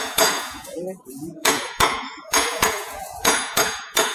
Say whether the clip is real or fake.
fake